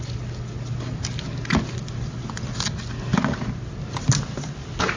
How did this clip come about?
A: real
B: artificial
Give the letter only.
A